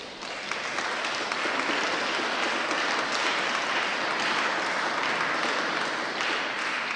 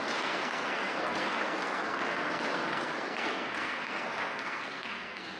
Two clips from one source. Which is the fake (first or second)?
second